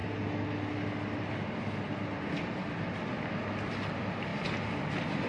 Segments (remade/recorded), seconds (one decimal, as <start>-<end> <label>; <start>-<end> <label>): 0.0-5.3 recorded